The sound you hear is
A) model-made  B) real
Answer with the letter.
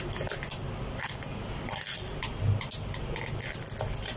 B